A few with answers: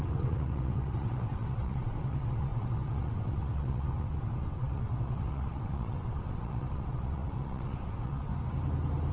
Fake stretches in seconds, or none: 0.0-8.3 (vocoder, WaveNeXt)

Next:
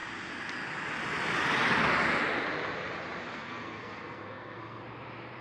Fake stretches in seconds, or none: 3.3-4.8 (codec, SNAC)

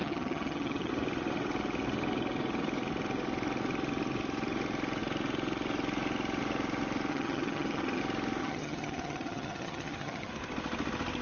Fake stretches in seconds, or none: 0.0-0.9 (vocoder, HiFi-GAN); 7.1-8.0; 8.4-10.3

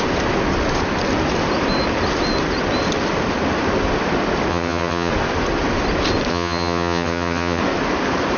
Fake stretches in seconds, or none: 4.5-5.1 (vocoder, HiFi-GAN); 6.3-7.6

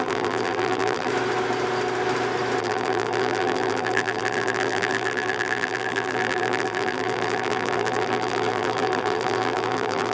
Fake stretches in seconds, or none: 0.0-1.1 (vocoder, BigVGAN v2); 2.6-10.1